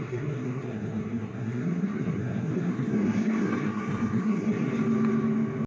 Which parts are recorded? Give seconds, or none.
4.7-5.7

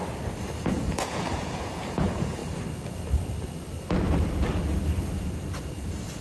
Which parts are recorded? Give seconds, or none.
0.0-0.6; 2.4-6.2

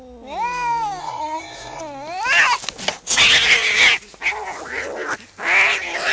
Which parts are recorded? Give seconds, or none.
0.0-1.0; 1.8-6.1

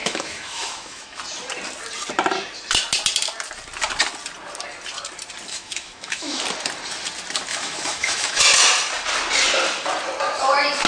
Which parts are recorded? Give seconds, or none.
1.2-5.5; 6.4-7.5; 8.4-10.9